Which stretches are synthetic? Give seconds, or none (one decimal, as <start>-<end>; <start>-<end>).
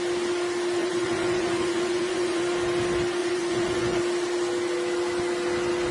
0.8-2.4; 3.2-4.0